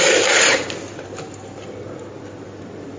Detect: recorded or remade recorded